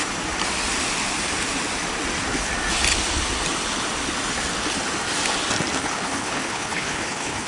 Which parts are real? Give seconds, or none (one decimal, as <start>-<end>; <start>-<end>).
0.0-5.8

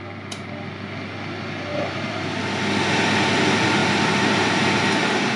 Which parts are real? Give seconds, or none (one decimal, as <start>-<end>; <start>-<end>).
0.0-1.7; 2.4-3.8